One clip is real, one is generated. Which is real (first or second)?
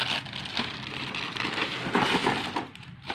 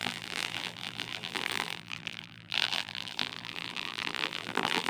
first